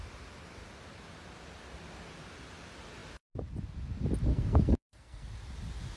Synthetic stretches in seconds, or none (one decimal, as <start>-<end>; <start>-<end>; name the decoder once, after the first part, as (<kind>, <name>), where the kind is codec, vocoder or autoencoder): 4.3-5.3 (codec, SNAC)